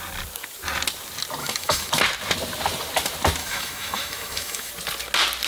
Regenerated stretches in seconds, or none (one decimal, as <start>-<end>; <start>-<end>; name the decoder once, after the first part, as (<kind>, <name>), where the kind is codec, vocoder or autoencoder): 1.4-1.9 (autoencoder, DAC-VAE); 3.4-4.7